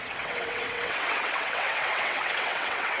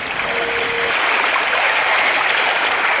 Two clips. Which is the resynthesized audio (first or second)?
first